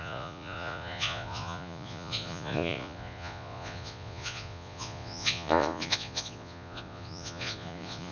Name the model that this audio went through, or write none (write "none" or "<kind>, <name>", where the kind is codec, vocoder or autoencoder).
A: vocoder, Vocos